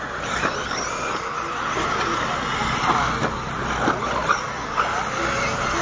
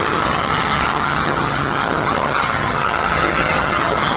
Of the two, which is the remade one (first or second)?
second